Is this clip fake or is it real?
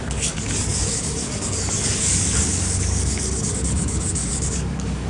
fake